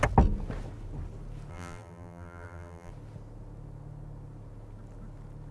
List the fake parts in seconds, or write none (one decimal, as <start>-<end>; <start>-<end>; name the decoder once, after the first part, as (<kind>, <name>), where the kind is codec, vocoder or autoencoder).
1.5-2.9 (vocoder, BigVGAN v2)